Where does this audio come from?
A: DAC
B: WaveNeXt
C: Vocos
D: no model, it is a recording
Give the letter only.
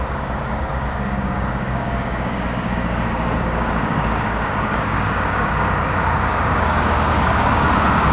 A